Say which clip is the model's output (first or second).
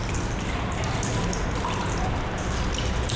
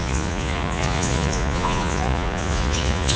second